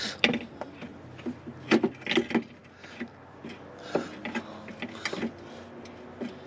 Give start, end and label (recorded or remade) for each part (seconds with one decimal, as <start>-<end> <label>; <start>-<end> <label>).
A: 0.0-6.5 recorded

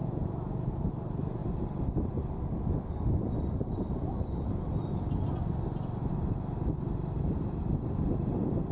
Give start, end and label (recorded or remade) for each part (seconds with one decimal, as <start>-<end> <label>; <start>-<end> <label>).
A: 0.0-8.7 recorded

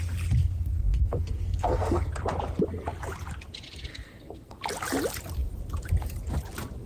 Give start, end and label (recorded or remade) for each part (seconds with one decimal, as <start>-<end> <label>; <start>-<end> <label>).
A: 0.0-0.4 recorded; 0.4-2.1 remade; 2.1-3.9 recorded; 3.9-4.6 remade; 4.6-6.9 recorded

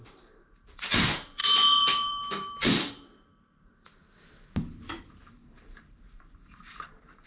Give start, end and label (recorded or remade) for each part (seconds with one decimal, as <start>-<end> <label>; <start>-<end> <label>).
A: 0.0-4.0 remade; 4.0-5.0 recorded; 5.0-7.3 remade

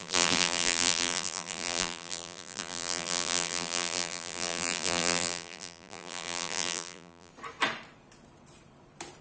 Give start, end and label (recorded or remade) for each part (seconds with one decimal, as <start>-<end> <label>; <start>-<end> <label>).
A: 0.0-7.3 remade; 7.3-9.2 recorded

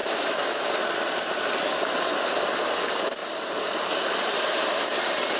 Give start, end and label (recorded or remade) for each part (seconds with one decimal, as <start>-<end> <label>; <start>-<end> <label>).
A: 0.0-0.6 remade; 0.6-5.4 recorded

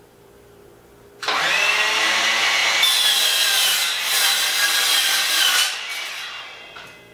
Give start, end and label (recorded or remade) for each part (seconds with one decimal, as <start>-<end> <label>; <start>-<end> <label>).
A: 0.0-0.6 remade; 0.6-1.5 recorded; 1.5-7.1 remade